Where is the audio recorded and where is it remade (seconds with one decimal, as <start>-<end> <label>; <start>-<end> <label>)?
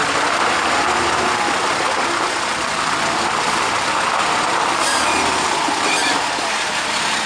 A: 0.0-4.4 remade; 4.4-7.3 recorded